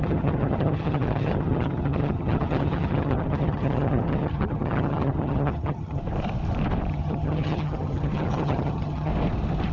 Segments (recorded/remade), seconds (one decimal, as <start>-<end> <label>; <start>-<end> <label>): 0.0-6.0 remade; 6.0-6.9 recorded; 6.9-9.1 remade; 9.1-9.7 recorded